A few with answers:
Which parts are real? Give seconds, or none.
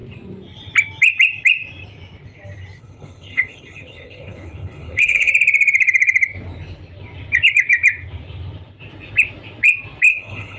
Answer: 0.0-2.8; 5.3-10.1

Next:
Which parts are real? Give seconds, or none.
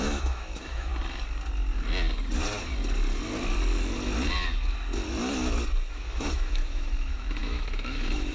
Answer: 0.9-5.9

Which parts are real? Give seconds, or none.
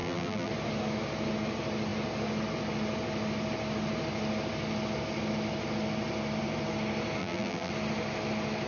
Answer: 0.5-7.2; 7.7-8.7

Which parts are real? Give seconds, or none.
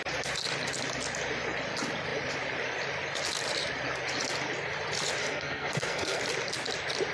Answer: 0.0-5.2; 6.2-7.1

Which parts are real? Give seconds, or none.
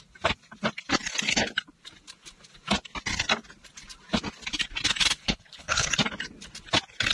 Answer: 0.0-5.2; 5.9-7.1